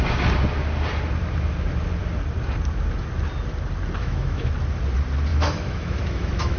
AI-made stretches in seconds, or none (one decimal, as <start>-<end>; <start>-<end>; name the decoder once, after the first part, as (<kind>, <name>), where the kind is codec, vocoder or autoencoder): 4.0-4.5 (autoencoder, DAC-VAE); 5.3-6.6